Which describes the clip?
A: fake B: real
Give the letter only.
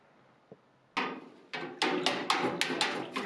B